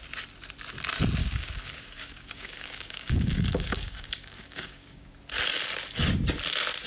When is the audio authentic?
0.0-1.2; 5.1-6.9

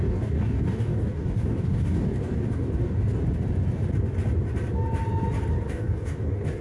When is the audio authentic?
3.2-5.7

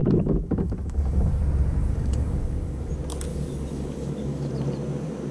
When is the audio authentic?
1.4-1.8; 2.9-3.3; 4.5-5.3

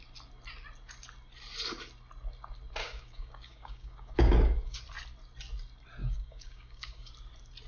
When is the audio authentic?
0.0-2.8; 4.8-6.0; 7.1-7.7

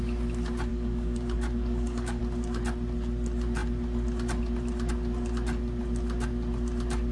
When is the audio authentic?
0.0-0.7; 2.2-7.1

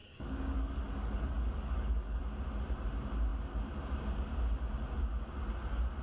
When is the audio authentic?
2.2-6.0

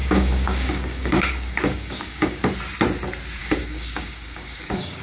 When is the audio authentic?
2.4-3.4